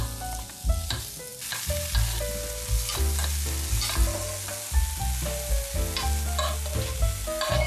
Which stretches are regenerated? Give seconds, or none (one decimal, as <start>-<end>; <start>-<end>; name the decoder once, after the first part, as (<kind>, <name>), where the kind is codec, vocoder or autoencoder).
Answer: none